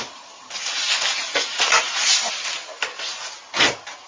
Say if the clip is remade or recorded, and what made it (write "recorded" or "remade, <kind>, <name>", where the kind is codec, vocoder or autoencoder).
recorded